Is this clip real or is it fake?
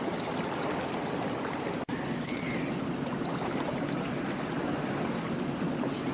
real